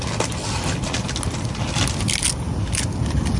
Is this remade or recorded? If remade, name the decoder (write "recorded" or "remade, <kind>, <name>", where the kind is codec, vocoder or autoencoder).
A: recorded